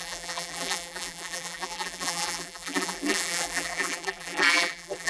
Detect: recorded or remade remade